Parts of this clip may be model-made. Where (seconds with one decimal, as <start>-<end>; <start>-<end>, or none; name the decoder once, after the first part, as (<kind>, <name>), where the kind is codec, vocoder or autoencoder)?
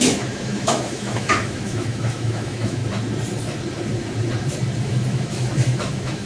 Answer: 0.0-2.8 (autoencoder, DAC-VAE); 4.8-6.3